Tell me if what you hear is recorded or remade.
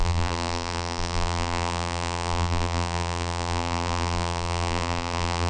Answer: remade